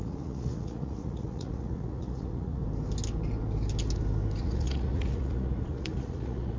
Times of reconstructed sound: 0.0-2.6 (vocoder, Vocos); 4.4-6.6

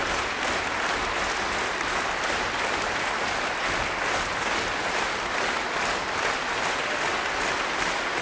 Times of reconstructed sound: none

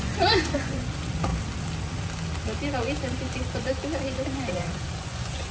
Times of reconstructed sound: 0.0-1.3 (vocoder, Vocos); 4.5-5.5

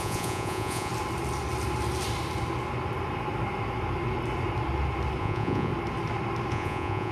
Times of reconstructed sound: 0.0-0.9 (vocoder, Vocos); 5.2-5.7; 6.5-7.1

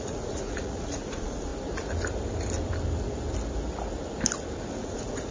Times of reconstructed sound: 0.0-1.5 (vocoder, Vocos); 4.7-5.3

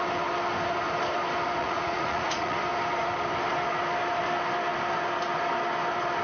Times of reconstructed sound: 1.6-2.6 (vocoder, Vocos)